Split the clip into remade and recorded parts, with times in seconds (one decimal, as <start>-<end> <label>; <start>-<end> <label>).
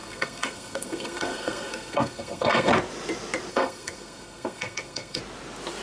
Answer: 0.0-2.7 remade; 2.7-3.5 recorded; 3.5-5.2 remade; 5.2-5.8 recorded